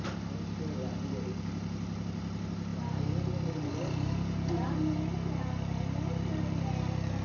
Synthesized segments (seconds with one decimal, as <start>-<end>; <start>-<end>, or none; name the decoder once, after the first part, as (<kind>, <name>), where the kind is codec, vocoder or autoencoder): none